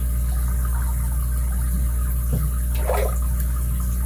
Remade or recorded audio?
recorded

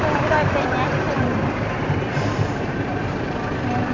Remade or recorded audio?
remade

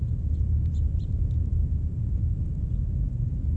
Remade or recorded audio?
remade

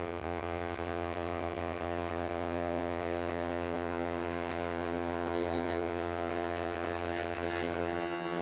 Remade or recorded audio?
remade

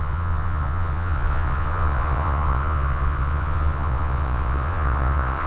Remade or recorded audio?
remade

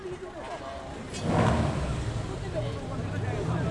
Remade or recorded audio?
recorded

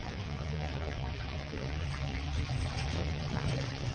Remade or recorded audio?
remade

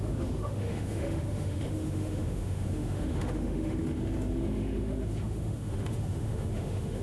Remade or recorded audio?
remade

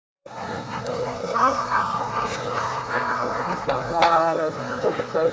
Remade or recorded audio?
remade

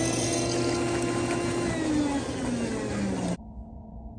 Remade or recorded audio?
recorded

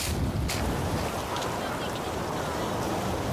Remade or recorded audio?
recorded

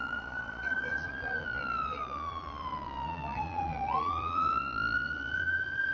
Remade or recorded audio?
remade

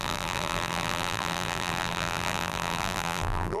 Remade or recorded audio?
remade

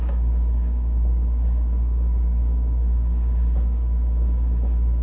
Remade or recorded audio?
remade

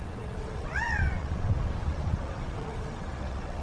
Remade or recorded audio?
remade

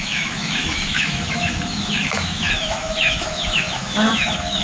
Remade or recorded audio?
remade